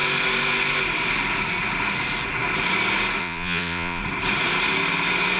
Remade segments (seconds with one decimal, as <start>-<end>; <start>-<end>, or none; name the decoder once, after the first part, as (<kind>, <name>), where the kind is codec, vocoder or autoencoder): 3.2-4.0 (vocoder, Vocos)